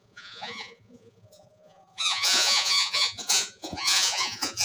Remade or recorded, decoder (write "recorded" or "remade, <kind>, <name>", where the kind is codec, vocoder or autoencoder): remade, vocoder, Vocos